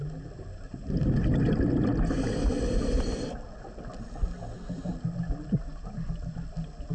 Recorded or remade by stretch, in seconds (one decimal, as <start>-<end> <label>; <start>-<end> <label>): 0.0-6.9 recorded